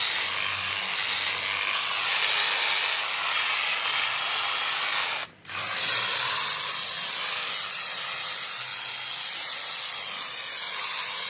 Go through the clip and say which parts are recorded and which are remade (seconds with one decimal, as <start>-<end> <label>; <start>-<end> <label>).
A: 0.0-11.3 recorded